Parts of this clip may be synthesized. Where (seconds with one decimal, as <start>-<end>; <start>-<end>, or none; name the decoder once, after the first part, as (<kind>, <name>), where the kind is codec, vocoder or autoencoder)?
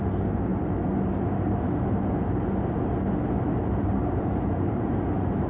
0.0-0.5 (vocoder, BigVGAN v2); 3.8-5.5